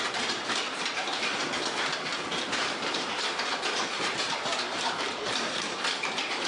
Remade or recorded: remade